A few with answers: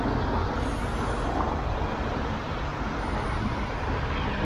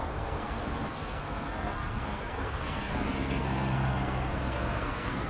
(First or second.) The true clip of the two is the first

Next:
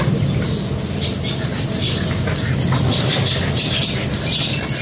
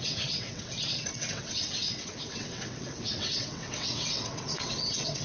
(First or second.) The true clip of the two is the first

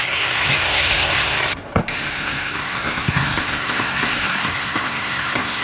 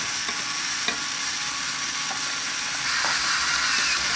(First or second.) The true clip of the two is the second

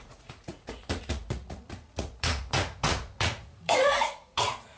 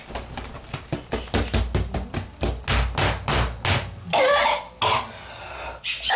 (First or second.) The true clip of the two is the second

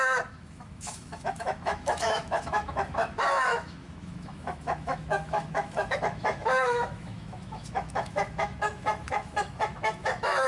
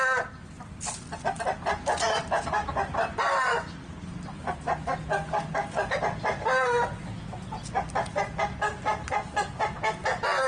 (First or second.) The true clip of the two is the second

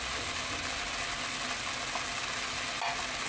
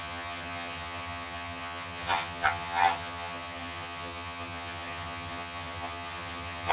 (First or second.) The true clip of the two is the first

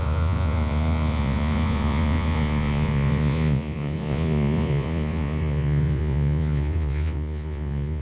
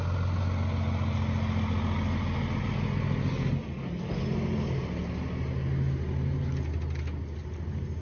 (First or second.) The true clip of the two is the second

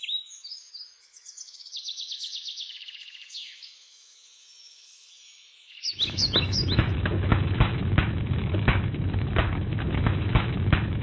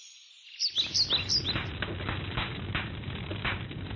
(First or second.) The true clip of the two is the second